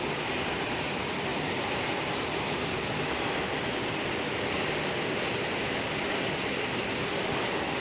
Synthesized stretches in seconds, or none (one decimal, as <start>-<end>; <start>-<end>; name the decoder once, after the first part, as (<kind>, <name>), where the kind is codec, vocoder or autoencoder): none